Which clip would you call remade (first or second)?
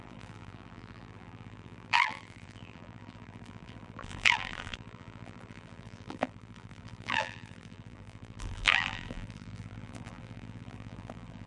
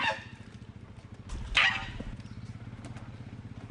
first